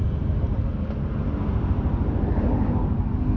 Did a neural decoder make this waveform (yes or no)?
no